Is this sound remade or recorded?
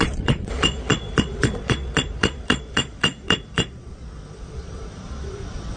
remade